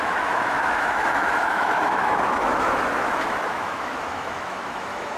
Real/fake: fake